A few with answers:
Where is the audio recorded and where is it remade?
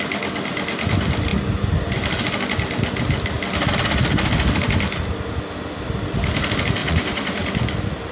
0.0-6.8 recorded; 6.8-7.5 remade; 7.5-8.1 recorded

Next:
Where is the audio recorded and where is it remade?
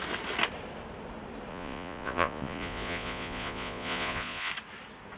0.0-1.5 recorded; 1.5-4.5 remade; 4.5-5.2 recorded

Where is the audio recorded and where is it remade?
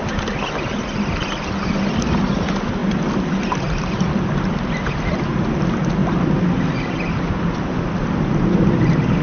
0.0-9.2 recorded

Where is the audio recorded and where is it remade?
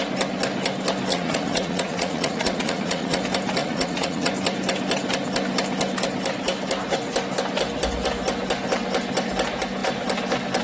0.0-1.1 recorded; 1.1-3.2 remade; 3.2-3.6 recorded; 3.6-4.3 remade; 4.3-10.6 recorded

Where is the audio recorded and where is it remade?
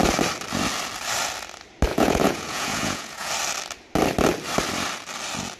0.0-1.9 recorded; 1.9-3.3 remade; 3.3-5.6 recorded